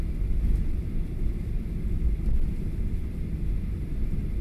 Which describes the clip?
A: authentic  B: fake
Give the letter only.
B